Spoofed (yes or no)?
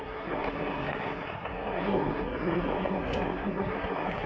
yes